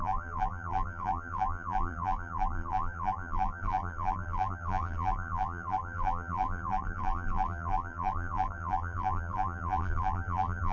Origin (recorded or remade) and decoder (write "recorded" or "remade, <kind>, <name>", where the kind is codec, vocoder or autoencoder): remade, vocoder, BigVGAN v2